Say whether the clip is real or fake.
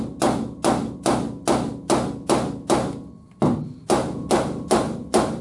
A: real